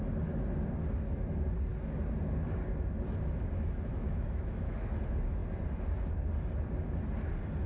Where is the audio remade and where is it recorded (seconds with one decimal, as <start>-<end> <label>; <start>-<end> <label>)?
0.0-3.9 recorded; 3.9-4.8 remade; 4.8-7.7 recorded